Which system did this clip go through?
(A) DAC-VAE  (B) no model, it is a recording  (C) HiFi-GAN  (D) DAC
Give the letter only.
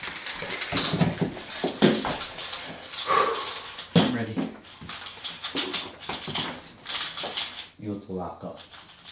B